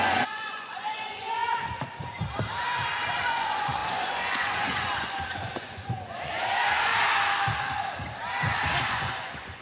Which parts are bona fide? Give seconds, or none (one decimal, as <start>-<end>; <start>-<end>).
2.2-3.2; 6.9-8.9